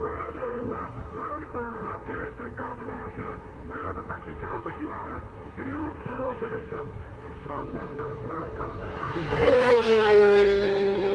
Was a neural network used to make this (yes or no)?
yes